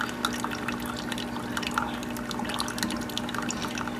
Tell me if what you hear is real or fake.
real